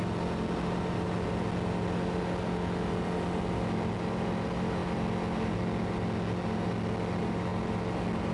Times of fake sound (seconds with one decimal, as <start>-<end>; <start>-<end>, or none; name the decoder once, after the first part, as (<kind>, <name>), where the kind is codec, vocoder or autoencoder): none